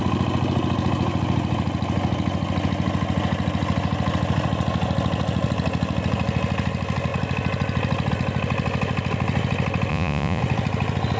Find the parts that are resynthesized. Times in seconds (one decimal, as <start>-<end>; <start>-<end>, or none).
9.9-10.4